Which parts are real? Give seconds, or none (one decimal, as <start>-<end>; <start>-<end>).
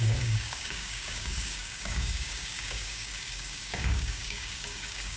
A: none